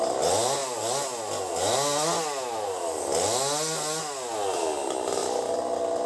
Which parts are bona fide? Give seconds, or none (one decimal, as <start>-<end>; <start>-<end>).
0.0-6.1